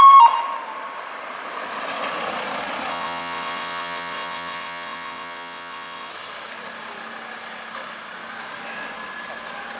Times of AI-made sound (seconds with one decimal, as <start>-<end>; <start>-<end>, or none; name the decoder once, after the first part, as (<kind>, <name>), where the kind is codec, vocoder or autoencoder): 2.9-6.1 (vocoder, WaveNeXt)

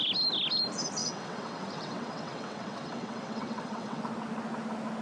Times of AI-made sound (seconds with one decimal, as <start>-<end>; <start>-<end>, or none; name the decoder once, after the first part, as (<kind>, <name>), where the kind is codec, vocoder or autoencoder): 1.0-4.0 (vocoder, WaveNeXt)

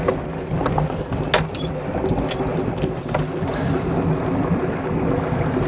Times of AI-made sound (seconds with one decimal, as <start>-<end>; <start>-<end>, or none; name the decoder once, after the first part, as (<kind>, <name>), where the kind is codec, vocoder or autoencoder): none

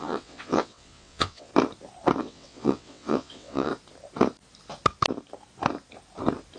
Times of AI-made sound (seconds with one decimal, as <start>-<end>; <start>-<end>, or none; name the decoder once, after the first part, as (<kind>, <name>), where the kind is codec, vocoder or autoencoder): 0.0-1.5 (vocoder, WaveNeXt); 2.2-3.7